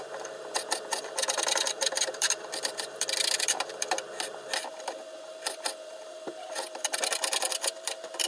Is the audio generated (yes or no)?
yes